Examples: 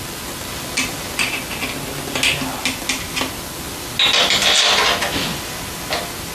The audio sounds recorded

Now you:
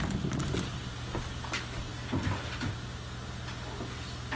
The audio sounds recorded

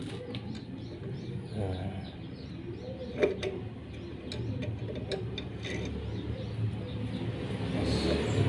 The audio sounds recorded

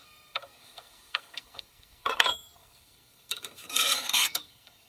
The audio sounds remade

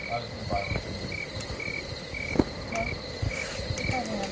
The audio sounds recorded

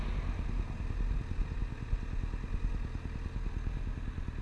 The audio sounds recorded